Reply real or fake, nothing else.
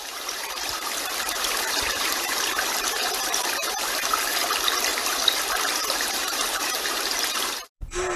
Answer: fake